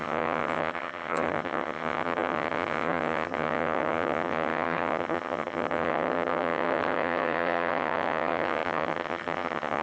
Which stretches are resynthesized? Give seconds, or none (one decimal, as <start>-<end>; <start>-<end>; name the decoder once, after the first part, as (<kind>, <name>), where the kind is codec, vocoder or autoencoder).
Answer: 0.0-9.8 (vocoder, HiFi-GAN)